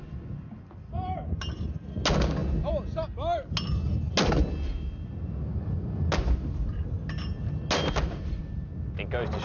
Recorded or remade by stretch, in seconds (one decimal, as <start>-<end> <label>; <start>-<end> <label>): 0.0-9.4 recorded